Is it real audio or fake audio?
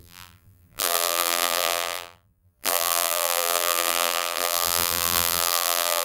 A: fake